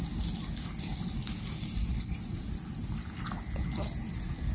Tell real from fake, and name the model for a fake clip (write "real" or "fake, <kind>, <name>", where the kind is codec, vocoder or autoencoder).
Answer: real